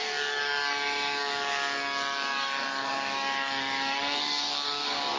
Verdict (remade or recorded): remade